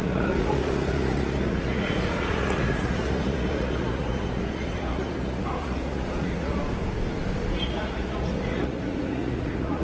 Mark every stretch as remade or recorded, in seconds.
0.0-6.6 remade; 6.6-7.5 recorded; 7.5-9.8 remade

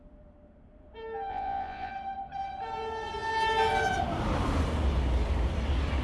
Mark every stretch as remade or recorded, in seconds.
0.0-1.3 recorded; 1.3-1.9 remade; 1.9-6.0 recorded

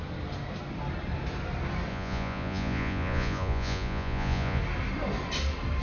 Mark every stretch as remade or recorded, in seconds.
0.0-1.9 recorded; 1.9-4.6 remade; 4.6-5.8 recorded